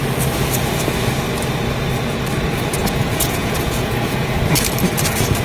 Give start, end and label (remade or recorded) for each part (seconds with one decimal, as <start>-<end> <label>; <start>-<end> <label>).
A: 0.0-2.8 recorded; 2.8-4.4 remade; 4.4-5.4 recorded